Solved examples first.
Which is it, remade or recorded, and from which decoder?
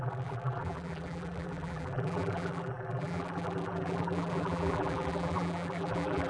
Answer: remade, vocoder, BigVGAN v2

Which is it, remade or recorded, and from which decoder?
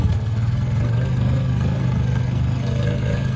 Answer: remade, codec, SNAC